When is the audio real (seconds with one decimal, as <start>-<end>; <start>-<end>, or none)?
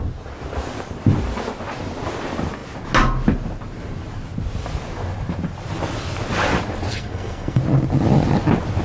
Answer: 0.0-6.9; 7.6-8.8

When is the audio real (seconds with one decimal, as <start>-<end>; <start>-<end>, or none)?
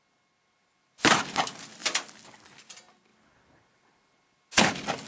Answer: 0.0-5.1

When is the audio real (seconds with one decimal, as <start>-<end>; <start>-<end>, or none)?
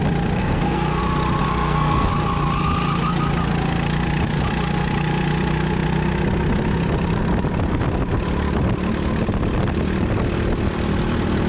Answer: 0.0-0.4; 1.0-1.4; 2.1-11.5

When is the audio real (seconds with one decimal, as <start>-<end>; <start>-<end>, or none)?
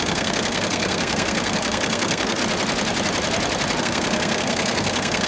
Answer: 2.4-3.8